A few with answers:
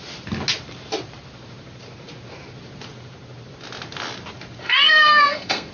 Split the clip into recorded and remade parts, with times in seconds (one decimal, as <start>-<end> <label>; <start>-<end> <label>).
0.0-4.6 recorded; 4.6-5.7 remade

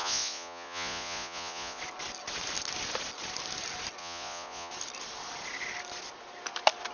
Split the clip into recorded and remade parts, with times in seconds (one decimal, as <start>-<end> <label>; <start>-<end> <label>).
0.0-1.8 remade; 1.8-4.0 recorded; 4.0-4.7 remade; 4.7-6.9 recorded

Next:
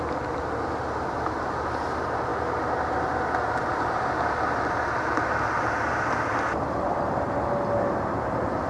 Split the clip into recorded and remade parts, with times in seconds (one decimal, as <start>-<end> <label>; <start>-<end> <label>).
0.0-8.7 recorded